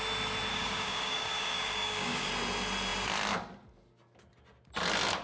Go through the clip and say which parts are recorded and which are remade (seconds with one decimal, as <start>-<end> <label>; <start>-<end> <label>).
0.0-0.5 recorded; 0.5-2.3 remade; 2.3-5.2 recorded